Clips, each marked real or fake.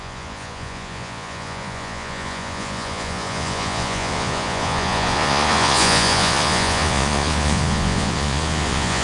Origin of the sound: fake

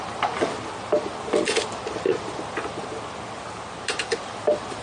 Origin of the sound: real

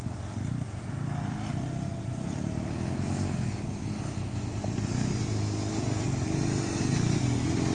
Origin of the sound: real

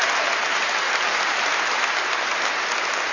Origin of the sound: real